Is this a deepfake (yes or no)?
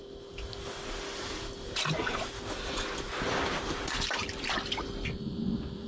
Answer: no